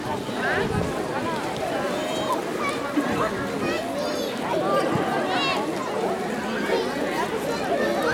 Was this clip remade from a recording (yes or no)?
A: no